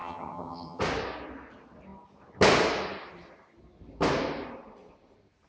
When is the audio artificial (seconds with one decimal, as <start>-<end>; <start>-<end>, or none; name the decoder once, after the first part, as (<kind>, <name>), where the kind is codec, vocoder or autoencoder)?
0.0-0.8 (vocoder, HiFi-GAN)